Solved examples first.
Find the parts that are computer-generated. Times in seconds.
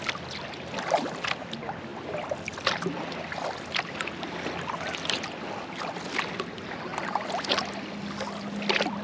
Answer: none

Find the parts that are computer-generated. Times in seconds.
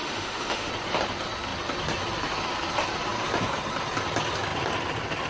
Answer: 0.0-0.7 (autoencoder, DAC-VAE)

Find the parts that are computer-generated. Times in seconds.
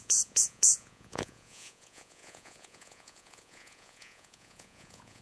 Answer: 0.0-5.2 (vocoder, Vocos)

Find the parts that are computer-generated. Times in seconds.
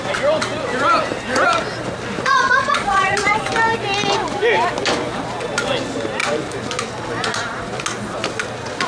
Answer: 2.3-3.5 (vocoder, Vocos)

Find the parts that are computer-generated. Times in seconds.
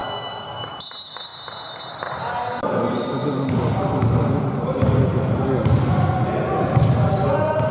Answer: none